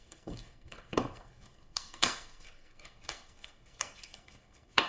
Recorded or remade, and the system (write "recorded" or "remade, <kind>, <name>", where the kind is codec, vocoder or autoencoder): remade, codec, SNAC